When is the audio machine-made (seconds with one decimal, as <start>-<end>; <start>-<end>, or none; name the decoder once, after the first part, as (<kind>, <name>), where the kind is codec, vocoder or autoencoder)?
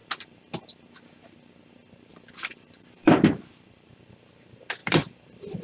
2.1-3.9 (vocoder, BigVGAN v2); 4.8-5.6